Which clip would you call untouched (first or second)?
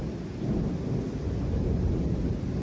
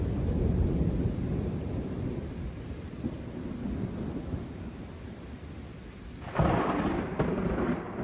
first